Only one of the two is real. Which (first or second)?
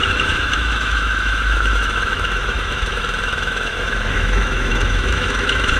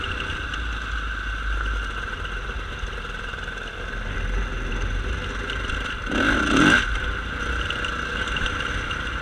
second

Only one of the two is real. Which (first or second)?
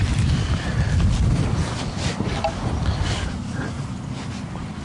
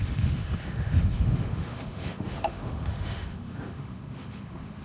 first